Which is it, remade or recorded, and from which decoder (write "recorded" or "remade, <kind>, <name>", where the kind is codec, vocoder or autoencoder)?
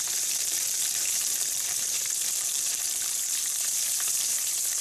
remade, vocoder, BigVGAN v2